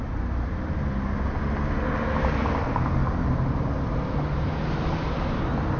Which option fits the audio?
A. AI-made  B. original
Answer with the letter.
B